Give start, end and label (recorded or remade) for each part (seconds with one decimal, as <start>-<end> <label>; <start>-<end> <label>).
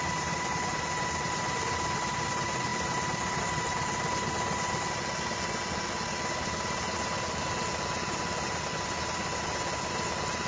0.0-10.5 recorded